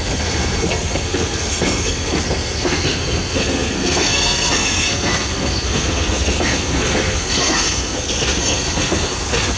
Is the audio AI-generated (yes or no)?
yes